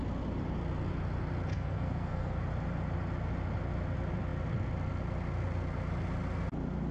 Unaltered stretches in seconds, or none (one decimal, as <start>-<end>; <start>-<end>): 0.0-1.5; 2.4-6.9